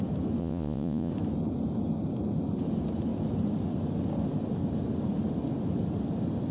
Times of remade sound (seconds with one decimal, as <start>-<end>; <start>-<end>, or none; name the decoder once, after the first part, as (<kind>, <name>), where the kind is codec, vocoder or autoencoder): 0.4-1.1 (vocoder, Vocos)